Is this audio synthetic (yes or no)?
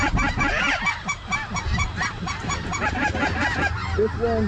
no